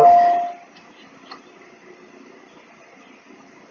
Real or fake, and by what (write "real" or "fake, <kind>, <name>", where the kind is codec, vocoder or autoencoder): real